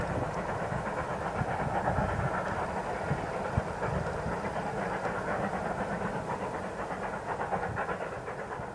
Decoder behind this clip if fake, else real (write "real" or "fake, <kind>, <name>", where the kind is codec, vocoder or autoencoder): real